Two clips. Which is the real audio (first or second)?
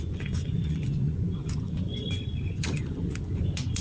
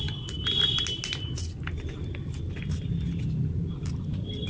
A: second